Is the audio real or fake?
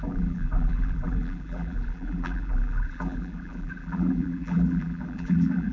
fake